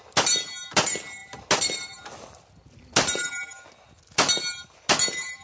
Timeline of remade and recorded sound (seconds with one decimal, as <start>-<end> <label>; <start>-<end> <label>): 0.0-5.4 recorded

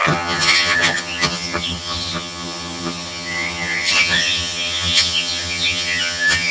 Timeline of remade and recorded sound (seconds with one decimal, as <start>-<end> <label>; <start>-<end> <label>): 0.0-6.5 remade

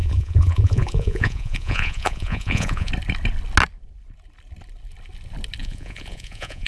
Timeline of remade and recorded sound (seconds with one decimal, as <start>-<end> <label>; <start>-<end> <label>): 0.0-2.9 remade; 2.9-5.6 recorded; 5.6-6.7 remade